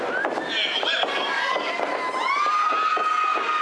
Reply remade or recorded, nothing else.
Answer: recorded